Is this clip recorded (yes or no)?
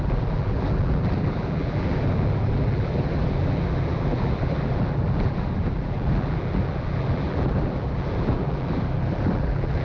no